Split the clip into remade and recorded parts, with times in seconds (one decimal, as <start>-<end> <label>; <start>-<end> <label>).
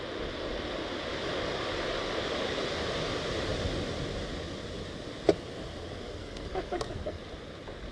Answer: 0.0-6.0 recorded; 6.0-7.2 remade; 7.2-7.9 recorded